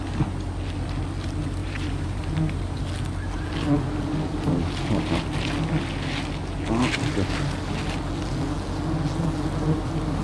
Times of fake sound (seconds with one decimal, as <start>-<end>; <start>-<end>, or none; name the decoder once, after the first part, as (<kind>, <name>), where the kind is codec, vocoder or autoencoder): 1.6-2.8 (vocoder, BigVGAN v2)